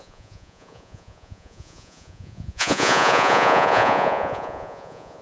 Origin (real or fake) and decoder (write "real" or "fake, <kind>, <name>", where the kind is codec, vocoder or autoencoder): fake, vocoder, Vocos